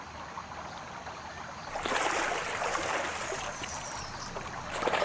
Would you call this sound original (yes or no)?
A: yes